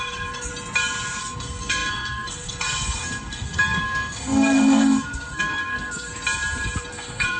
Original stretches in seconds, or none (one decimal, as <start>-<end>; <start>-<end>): 0.5-1.2; 6.1-6.9

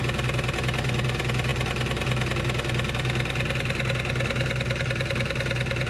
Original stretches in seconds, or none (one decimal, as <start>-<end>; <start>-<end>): 0.0-5.9